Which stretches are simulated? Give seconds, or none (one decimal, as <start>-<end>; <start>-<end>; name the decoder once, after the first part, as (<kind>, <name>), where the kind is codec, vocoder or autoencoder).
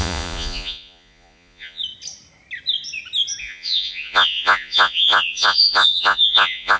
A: 0.0-1.8 (vocoder, Vocos); 3.4-6.8